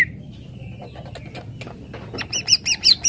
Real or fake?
real